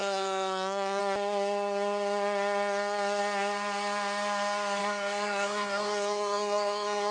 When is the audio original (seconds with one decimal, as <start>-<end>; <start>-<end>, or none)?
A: 1.0-4.8